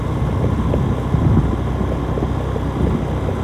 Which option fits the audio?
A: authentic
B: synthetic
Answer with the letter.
A